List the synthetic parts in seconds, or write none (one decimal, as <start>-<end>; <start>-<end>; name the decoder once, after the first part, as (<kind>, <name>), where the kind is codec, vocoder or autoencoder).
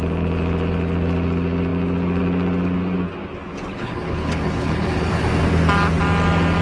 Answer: 3.7-5.1 (codec, HILCodec)